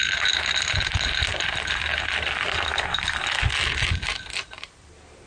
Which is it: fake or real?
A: real